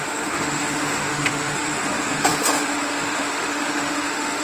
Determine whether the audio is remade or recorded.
remade